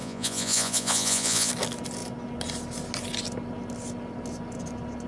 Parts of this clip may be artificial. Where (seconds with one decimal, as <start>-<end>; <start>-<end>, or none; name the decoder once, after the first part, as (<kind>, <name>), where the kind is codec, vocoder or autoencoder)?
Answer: 0.0-1.5 (vocoder, Vocos)